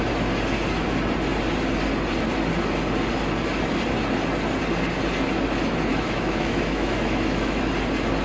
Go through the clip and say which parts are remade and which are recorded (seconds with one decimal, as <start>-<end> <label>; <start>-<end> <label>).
0.0-5.9 recorded; 5.9-7.7 remade; 7.7-8.2 recorded